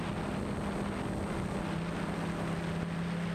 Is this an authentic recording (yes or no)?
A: yes